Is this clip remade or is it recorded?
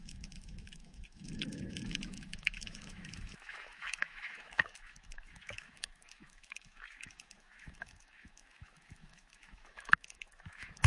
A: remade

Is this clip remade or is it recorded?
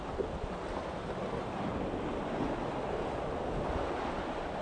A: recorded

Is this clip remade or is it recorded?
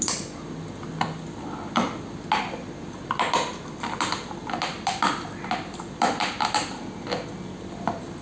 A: recorded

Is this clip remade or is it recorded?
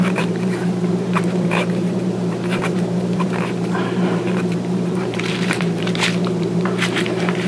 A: remade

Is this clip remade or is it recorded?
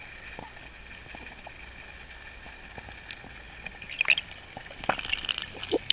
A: recorded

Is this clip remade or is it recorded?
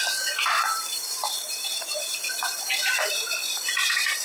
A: remade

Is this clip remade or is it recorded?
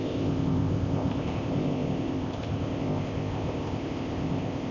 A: remade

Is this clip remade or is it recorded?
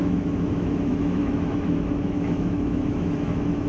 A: remade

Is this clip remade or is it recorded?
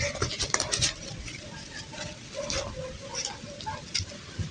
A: recorded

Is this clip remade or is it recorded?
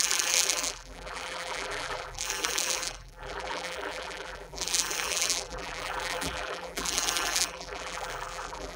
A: remade